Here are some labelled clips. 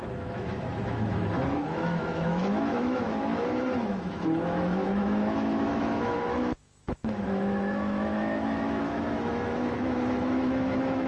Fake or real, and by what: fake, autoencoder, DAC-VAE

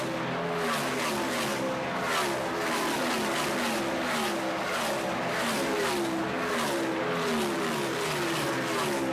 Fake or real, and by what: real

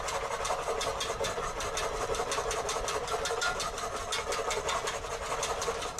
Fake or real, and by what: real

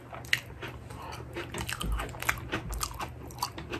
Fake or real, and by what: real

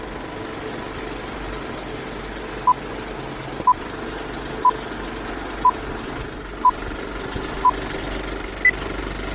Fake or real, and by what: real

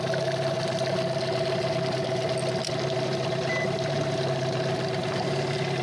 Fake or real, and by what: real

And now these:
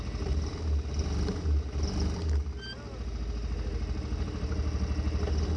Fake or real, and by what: real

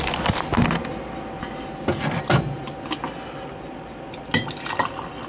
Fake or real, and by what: real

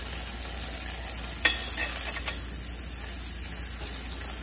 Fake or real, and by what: real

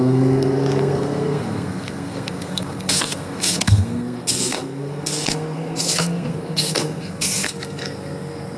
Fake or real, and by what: fake, codec, SNAC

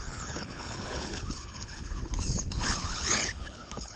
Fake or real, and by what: fake, codec, HILCodec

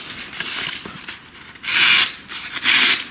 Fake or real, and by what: real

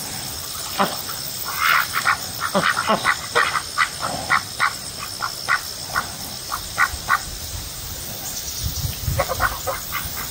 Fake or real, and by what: real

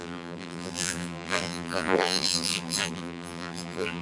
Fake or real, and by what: fake, vocoder, BigVGAN v2